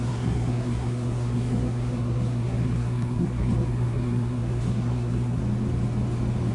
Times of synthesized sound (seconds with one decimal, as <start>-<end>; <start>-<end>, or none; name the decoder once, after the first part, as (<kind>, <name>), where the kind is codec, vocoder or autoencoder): 0.0-5.4 (codec, SNAC)